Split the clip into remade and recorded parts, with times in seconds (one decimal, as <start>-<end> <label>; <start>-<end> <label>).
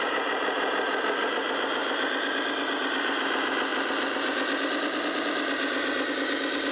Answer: 0.0-6.7 recorded